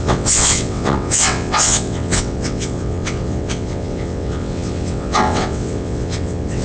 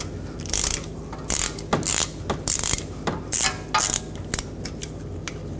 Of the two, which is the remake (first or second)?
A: first